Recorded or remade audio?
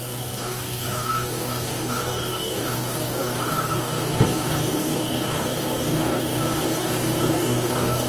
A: remade